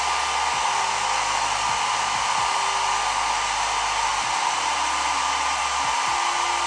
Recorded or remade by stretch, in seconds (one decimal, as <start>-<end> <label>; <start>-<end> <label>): 0.0-6.7 recorded